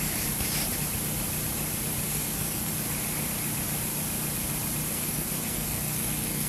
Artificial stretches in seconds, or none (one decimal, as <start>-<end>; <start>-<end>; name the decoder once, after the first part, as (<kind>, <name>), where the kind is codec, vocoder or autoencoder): 2.1-2.7 (codec, SNAC); 4.9-6.5